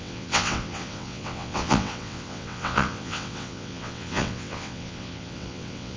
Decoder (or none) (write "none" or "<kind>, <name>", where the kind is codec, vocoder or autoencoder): vocoder, WaveNeXt